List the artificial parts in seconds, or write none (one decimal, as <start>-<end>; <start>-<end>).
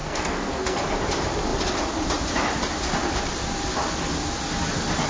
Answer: 0.0-0.8